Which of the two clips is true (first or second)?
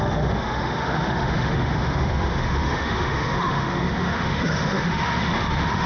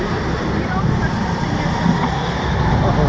second